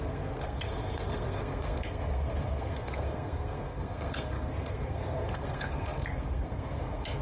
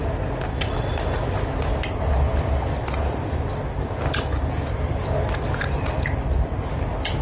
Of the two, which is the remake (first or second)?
first